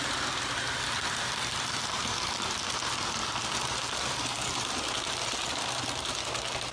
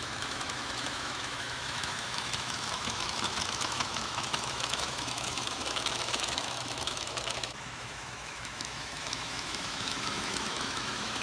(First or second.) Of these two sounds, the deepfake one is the second